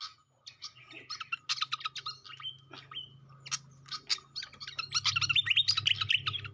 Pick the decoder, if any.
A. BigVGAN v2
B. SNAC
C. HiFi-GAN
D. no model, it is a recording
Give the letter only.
D